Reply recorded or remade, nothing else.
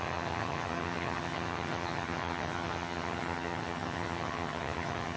remade